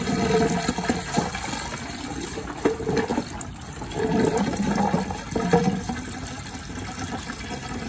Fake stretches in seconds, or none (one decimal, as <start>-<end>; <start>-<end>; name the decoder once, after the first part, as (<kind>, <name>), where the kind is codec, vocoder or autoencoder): none